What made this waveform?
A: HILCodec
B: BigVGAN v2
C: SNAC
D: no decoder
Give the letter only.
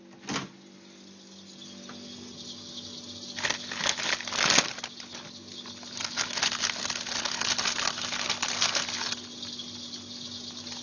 D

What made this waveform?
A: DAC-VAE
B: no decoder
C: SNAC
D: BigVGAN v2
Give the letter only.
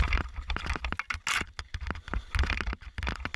B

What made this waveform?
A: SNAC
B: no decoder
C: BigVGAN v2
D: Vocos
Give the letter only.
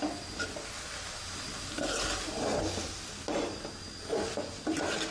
B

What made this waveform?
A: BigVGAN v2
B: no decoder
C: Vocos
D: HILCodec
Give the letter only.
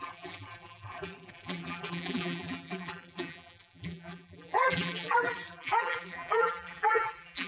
A